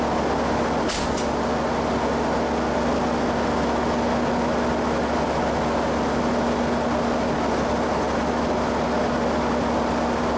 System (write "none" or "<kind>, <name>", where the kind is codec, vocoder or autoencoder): none